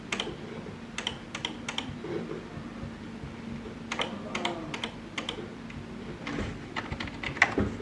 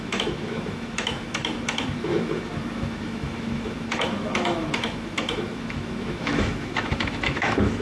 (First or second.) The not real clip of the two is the second